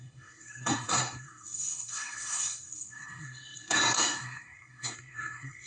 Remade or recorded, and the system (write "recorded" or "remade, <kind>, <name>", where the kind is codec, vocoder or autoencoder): remade, codec, SNAC